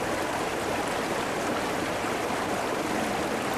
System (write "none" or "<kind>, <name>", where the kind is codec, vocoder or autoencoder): none